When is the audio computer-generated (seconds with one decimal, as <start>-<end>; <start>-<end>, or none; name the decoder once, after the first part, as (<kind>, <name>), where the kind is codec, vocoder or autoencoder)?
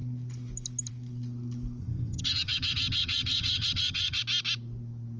1.8-4.2 (vocoder, HiFi-GAN)